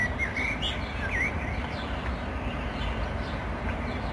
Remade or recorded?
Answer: recorded